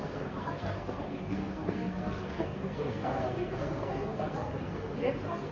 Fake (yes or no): yes